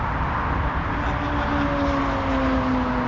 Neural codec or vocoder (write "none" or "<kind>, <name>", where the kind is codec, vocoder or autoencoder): none